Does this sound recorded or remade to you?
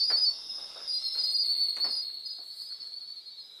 recorded